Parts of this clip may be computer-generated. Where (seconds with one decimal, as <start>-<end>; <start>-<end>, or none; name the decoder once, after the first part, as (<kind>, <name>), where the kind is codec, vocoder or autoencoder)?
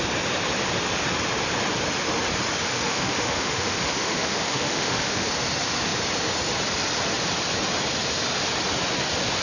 2.6-5.3 (autoencoder, DAC-VAE)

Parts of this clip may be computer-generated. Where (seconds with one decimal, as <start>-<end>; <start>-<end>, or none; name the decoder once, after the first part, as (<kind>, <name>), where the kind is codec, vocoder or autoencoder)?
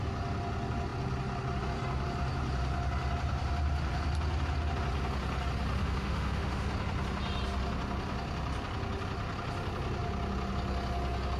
5.8-6.7 (autoencoder, DAC-VAE)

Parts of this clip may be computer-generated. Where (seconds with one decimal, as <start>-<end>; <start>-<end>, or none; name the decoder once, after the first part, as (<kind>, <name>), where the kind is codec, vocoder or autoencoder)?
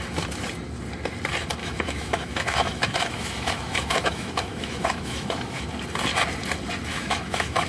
1.6-5.6 (autoencoder, DAC-VAE); 6.9-7.7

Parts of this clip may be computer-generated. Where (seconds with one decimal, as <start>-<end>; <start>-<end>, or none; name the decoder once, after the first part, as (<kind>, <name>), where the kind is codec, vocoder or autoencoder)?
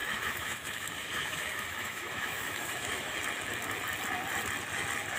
0.0-3.1 (autoencoder, DAC-VAE)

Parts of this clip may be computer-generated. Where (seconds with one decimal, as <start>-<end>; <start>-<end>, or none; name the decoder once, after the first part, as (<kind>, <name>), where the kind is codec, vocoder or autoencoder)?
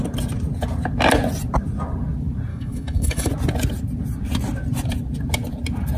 2.5-3.3 (autoencoder, DAC-VAE)